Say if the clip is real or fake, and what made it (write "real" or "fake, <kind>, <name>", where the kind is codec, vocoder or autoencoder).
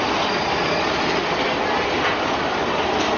real